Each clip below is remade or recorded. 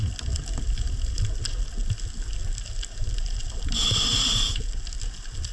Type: recorded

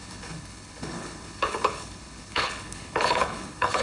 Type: remade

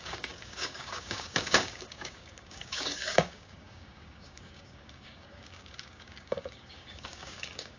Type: remade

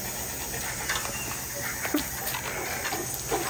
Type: recorded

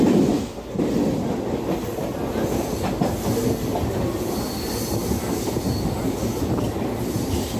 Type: recorded